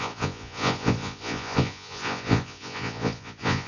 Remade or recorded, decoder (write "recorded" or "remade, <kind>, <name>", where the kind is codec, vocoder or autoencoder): remade, vocoder, Vocos